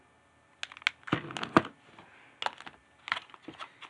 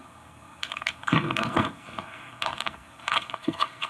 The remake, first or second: second